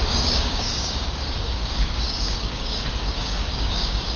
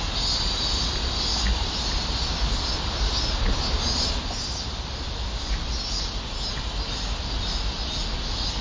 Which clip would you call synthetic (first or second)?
first